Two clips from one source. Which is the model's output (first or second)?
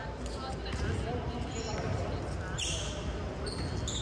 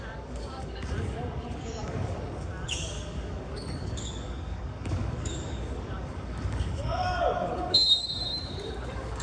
second